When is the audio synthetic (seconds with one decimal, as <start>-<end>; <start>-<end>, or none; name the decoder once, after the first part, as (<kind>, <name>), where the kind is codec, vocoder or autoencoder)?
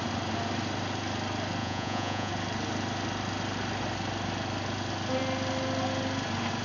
1.6-2.3 (vocoder, Vocos)